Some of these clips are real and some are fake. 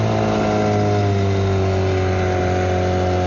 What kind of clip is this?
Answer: real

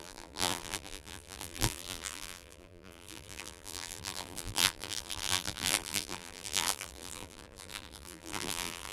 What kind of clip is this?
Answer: fake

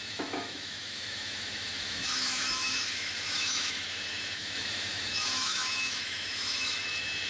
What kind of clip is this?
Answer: fake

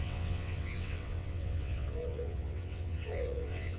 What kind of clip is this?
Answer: fake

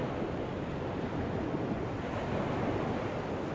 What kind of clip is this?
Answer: real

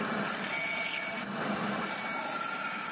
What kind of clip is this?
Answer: real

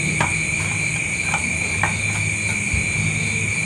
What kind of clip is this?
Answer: real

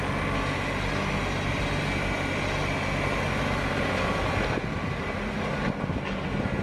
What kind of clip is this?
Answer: real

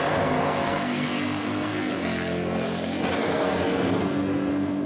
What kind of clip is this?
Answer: fake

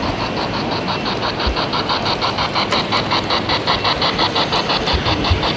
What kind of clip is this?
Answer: real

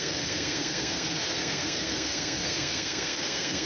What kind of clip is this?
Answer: fake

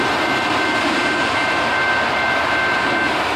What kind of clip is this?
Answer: real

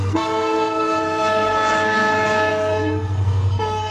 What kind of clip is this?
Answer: fake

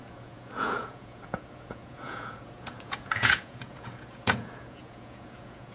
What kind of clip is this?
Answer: fake